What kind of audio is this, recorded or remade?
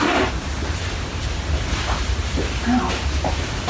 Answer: recorded